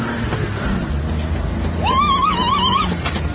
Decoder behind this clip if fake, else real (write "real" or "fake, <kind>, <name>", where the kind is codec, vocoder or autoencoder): real